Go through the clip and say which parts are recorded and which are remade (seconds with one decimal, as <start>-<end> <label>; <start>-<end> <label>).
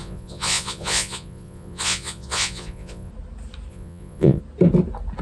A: 0.0-3.1 remade; 3.1-3.7 recorded; 3.7-4.4 remade; 4.4-5.2 recorded